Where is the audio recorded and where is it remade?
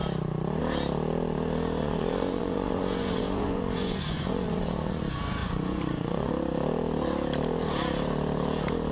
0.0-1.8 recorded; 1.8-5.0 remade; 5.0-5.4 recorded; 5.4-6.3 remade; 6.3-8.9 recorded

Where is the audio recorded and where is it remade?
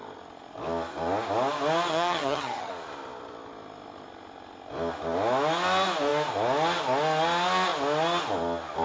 0.0-1.9 recorded; 1.9-2.7 remade; 2.7-8.8 recorded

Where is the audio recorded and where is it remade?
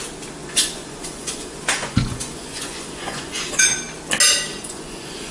0.0-0.4 recorded; 0.4-3.6 remade; 3.6-4.5 recorded; 4.5-5.3 remade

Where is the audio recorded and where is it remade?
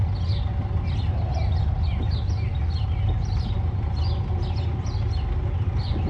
0.0-6.1 recorded